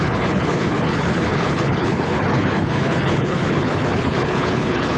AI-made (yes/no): yes